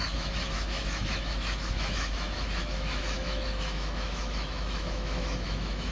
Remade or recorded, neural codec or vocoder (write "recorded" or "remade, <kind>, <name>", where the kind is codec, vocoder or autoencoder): remade, autoencoder, DAC-VAE